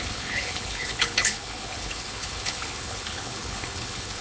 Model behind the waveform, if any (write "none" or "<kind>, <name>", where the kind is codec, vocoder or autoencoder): codec, HILCodec